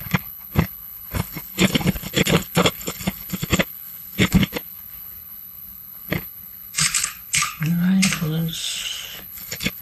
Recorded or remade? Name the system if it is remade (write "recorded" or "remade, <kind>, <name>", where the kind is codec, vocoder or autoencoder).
remade, codec, HILCodec